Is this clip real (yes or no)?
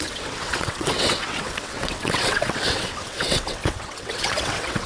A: no